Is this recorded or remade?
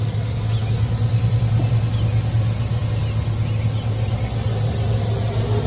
recorded